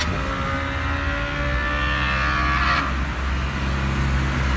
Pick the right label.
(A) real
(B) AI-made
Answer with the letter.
A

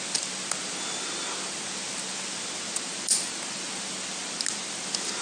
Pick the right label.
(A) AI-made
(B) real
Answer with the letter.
B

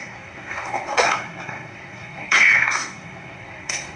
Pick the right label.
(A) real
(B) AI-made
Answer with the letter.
B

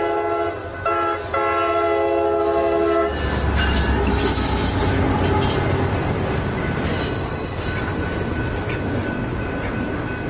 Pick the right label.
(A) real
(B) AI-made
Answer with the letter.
A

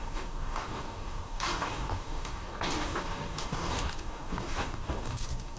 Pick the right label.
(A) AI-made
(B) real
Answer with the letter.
A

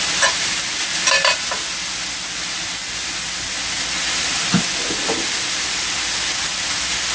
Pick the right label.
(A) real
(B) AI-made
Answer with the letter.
A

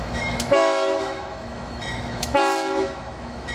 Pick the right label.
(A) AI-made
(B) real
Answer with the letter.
A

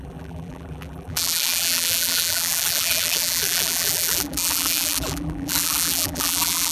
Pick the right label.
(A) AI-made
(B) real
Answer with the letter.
A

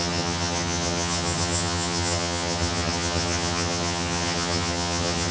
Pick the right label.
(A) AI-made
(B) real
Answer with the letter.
A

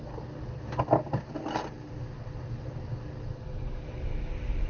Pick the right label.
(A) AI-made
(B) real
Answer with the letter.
B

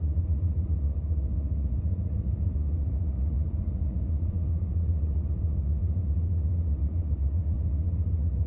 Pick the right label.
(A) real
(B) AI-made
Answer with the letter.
B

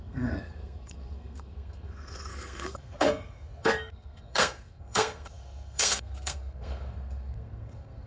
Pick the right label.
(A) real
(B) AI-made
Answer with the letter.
B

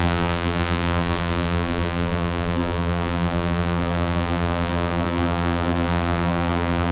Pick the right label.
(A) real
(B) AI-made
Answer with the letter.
B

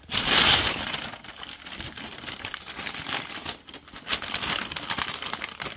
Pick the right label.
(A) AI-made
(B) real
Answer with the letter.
B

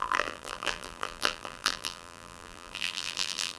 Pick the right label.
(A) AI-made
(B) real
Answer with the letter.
A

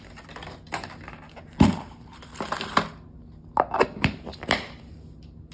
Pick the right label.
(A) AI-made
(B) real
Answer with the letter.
B